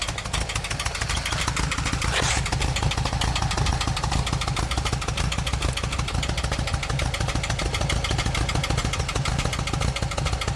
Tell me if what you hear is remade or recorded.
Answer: recorded